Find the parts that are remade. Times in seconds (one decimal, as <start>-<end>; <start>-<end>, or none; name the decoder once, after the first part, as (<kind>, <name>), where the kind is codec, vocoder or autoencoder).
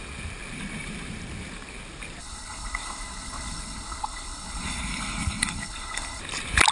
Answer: 2.2-6.2 (codec, HILCodec)